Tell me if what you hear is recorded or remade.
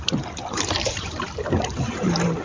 remade